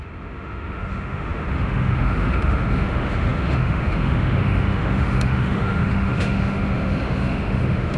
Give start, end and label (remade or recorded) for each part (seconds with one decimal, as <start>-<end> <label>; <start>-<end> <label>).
0.0-8.0 remade